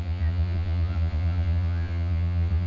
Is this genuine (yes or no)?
no